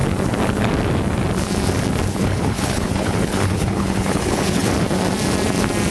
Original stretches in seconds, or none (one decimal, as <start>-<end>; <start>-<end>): 0.0-2.1; 4.7-5.9